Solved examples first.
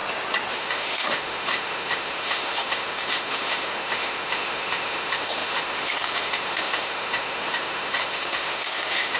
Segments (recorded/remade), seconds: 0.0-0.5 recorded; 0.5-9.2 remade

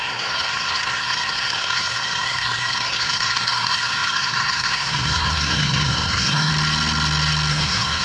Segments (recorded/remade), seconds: 0.0-6.5 remade; 6.5-7.5 recorded; 7.5-8.0 remade

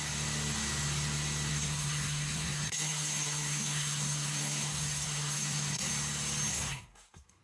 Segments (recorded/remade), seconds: 0.0-1.5 recorded; 1.5-5.9 remade; 5.9-6.5 recorded; 6.5-7.4 remade

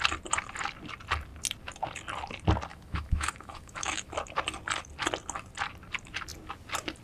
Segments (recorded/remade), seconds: 0.0-2.7 recorded; 2.7-4.1 remade; 4.1-7.0 recorded